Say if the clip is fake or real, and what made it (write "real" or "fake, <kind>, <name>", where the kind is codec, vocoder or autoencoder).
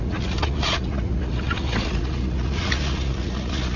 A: fake, vocoder, Vocos